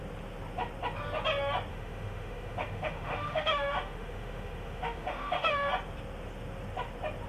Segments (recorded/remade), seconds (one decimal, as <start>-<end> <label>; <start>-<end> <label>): 0.0-1.7 recorded; 1.7-5.7 remade; 5.7-7.3 recorded